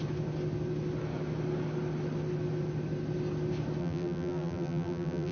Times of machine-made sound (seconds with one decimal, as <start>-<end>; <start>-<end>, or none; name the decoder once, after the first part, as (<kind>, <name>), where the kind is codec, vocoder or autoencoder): 3.8-5.3 (vocoder, BigVGAN v2)